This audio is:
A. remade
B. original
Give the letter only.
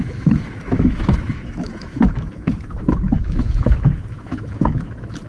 A